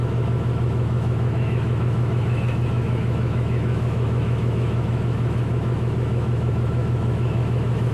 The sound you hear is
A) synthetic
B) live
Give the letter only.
A